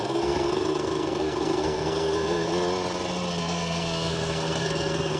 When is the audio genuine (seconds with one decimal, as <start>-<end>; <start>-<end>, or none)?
2.5-3.4